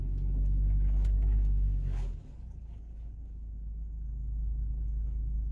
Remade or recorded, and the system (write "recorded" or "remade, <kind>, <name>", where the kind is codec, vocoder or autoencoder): remade, codec, DAC